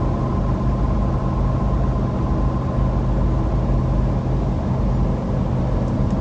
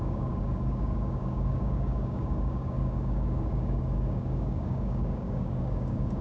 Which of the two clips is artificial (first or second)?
second